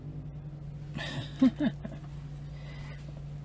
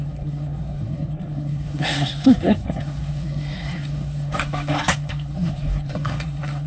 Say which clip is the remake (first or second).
second